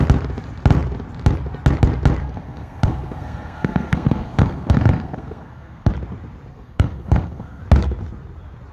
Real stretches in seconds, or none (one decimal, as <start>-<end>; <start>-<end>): 0.0-2.2; 5.9-6.5; 7.6-8.7